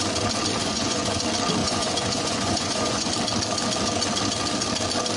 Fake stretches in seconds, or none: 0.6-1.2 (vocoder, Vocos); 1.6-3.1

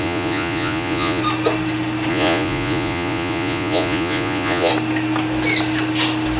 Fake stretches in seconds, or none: 0.0-1.2 (vocoder, Vocos); 2.1-4.7

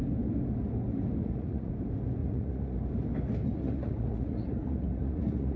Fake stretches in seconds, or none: 1.2-1.7 (vocoder, Vocos); 2.2-2.8; 3.5-5.6

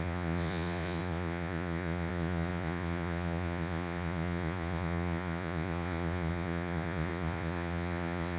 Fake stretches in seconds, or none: 0.0-8.4 (vocoder, Vocos)

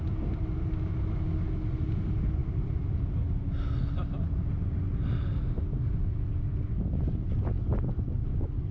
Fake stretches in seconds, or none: none

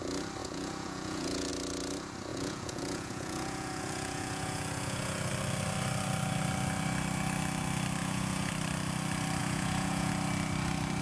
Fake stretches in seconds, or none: 0.4-1.5 (vocoder, Vocos); 2.3-5.3; 8.0-8.5; 9.4-10.1

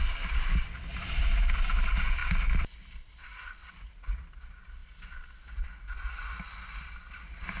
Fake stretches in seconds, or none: 3.6-4.2 (vocoder, Vocos)

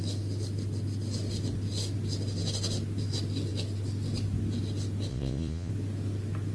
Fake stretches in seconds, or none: 5.1-5.7 (vocoder, Vocos)